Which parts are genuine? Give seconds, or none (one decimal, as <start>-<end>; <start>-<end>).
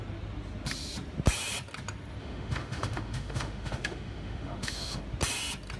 0.0-2.2; 5.0-5.8